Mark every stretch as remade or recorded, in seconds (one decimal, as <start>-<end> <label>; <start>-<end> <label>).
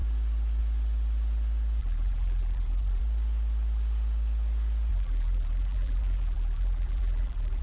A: 0.0-1.8 recorded; 1.8-3.0 remade; 3.0-4.9 recorded; 4.9-7.6 remade